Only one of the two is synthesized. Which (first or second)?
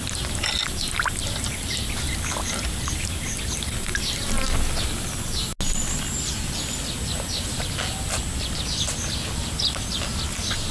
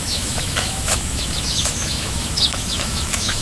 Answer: second